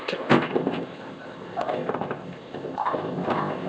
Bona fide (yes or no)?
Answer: no